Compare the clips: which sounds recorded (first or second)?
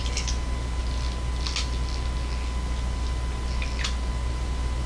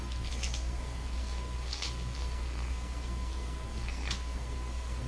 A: first